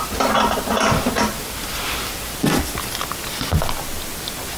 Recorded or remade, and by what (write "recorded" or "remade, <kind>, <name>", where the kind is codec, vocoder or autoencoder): recorded